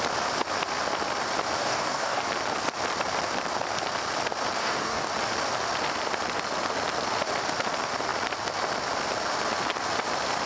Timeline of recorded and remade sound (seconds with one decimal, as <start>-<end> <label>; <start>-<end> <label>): 0.0-1.6 recorded; 1.6-2.2 remade; 2.2-4.6 recorded; 4.6-5.1 remade; 5.1-10.5 recorded